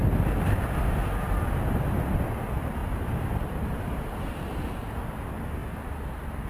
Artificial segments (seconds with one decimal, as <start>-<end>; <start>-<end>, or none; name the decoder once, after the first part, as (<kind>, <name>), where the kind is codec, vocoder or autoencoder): 2.8-4.3 (vocoder, BigVGAN v2)